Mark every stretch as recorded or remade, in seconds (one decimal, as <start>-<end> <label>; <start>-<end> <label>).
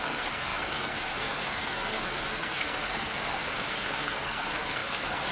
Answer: 0.0-5.3 remade